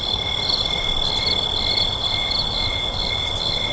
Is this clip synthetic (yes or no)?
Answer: no